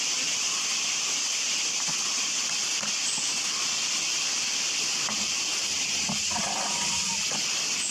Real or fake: real